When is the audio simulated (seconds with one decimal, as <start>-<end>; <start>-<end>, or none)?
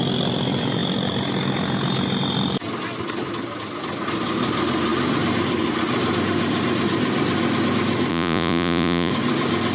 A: 8.1-9.1